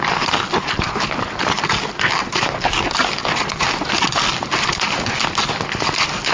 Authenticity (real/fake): real